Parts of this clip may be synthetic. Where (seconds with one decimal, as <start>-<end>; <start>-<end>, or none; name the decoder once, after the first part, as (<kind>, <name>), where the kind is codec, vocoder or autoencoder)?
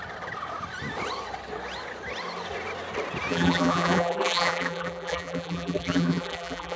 3.3-6.8 (vocoder, BigVGAN v2)